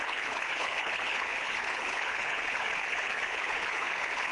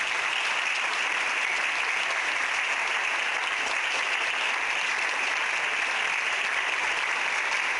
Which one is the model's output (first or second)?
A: first